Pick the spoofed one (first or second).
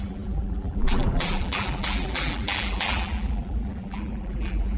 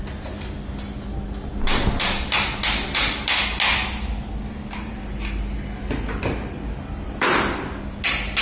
first